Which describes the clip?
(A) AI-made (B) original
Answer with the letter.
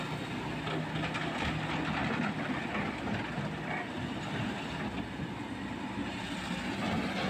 B